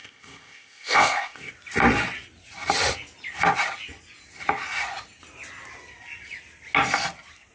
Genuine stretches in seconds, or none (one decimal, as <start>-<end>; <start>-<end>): 1.5-7.5